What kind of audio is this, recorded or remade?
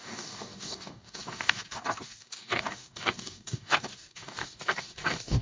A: remade